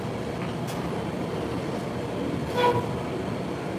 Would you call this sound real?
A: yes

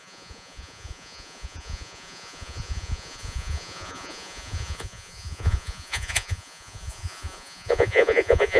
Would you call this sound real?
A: no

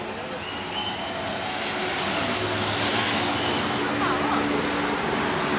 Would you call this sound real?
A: yes